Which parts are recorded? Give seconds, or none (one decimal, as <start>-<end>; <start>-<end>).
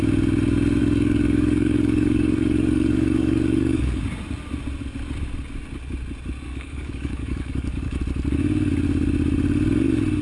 0.0-0.8; 4.0-6.5; 8.0-10.2